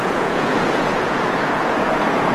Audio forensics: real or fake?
fake